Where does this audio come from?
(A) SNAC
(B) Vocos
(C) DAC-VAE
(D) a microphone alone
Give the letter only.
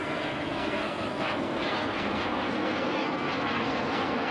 A